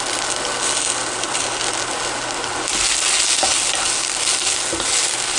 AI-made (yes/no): no